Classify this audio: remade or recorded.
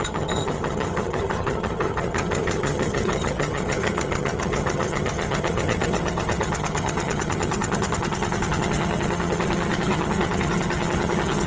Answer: remade